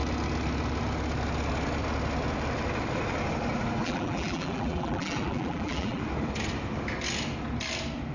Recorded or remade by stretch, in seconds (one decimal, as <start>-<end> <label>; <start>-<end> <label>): 0.0-3.8 recorded; 3.8-6.0 remade; 6.0-8.1 recorded